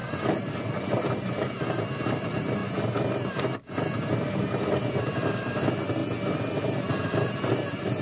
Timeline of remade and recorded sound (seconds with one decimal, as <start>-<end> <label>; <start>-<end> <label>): 0.0-1.1 recorded; 1.1-2.6 remade; 2.6-4.7 recorded; 4.7-6.0 remade; 6.0-7.0 recorded; 7.0-8.0 remade